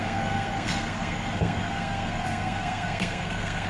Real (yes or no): no